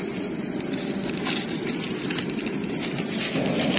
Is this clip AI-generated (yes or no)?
no